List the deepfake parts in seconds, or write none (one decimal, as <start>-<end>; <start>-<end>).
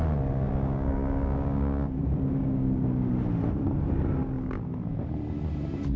0.5-3.1